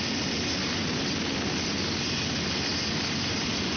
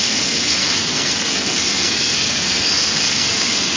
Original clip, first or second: first